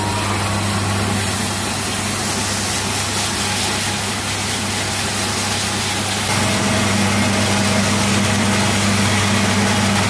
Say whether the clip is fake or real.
real